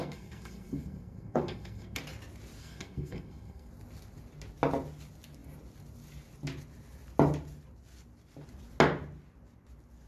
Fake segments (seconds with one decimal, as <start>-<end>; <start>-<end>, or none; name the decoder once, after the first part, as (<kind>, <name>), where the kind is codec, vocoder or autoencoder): 0.0-2.0 (codec, SNAC); 2.6-3.7